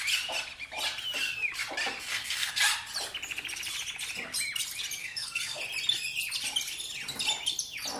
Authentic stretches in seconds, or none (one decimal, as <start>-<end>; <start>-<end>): 0.0-2.1; 2.6-5.0; 5.6-8.0